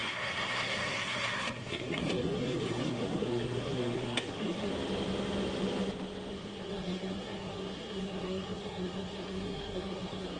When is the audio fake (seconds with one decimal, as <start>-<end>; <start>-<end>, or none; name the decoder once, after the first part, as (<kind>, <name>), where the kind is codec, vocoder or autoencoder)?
0.0-4.7 (codec, SNAC); 6.3-10.4